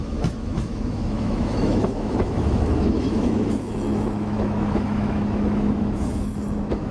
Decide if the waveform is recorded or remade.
remade